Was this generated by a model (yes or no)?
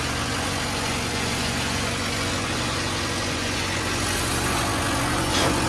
yes